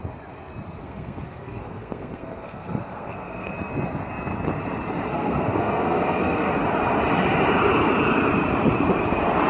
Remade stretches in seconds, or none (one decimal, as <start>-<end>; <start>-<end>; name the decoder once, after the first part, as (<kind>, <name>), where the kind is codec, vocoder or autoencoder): 0.8-3.5 (codec, SNAC); 5.1-6.5